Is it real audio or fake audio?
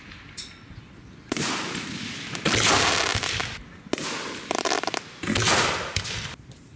real